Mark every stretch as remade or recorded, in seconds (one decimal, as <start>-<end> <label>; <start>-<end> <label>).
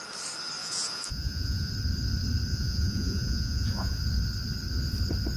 0.0-0.6 recorded; 0.6-1.7 remade; 1.7-2.5 recorded; 2.5-4.0 remade; 4.0-5.4 recorded